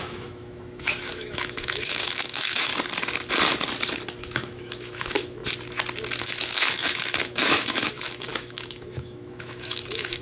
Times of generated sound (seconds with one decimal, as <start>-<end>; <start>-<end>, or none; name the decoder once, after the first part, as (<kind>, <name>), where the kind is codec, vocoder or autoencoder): 0.0-2.7 (autoencoder, DAC-VAE); 4.2-5.4; 6.2-10.2